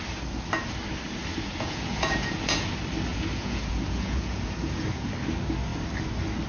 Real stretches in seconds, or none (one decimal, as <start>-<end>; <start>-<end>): 0.0-1.3; 2.7-3.1; 5.1-6.5